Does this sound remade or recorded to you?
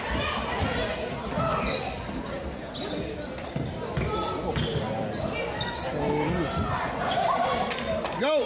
recorded